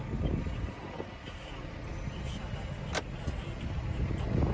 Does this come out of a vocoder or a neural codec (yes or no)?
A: no